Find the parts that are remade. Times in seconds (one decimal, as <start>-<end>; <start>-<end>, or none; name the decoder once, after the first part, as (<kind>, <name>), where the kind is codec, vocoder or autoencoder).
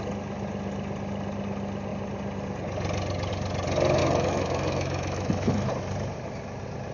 4.0-5.7 (autoencoder, DAC-VAE)